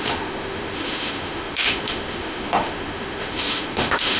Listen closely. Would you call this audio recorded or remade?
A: remade